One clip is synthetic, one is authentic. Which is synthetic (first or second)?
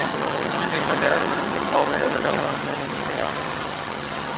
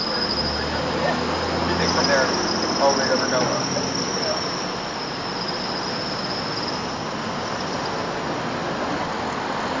first